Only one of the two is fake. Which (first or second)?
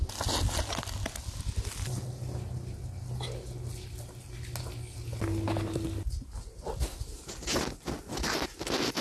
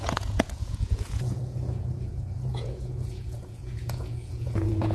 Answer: second